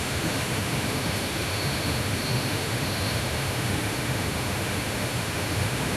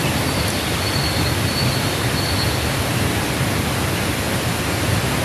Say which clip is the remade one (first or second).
first